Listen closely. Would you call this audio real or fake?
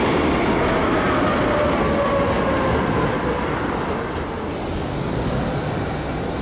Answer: real